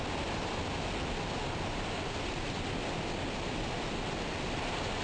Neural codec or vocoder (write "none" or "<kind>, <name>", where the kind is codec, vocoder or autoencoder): none